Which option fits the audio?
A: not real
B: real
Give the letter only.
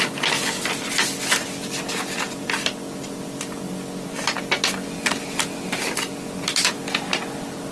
B